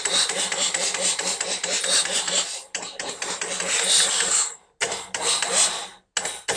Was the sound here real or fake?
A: real